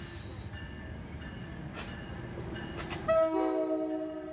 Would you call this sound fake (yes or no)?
no